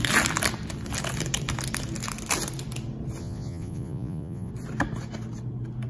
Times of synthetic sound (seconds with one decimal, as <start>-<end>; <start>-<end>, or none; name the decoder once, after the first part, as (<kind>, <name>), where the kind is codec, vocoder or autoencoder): 3.2-4.5 (vocoder, Vocos)